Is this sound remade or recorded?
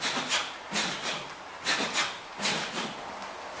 recorded